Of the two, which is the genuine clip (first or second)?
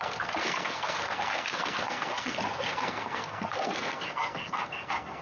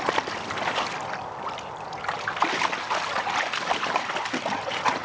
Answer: second